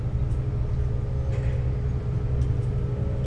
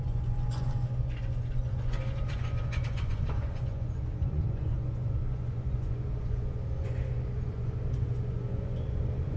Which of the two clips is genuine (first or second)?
first